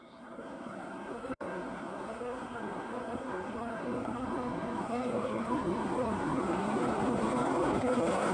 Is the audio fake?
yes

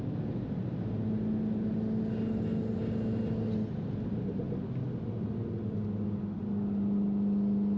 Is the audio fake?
no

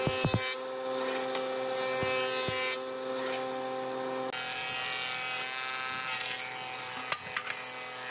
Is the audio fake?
no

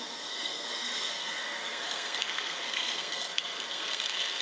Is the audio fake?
yes